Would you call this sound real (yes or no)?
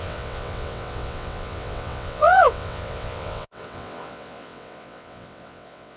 no